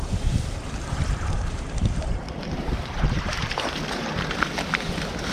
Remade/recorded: remade